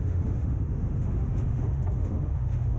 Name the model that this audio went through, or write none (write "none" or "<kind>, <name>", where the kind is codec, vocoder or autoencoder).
autoencoder, DAC-VAE